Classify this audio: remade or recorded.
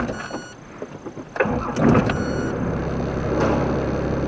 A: recorded